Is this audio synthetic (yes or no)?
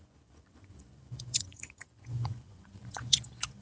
yes